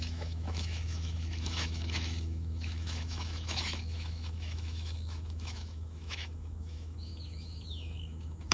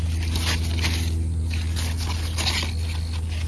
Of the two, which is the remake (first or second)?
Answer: first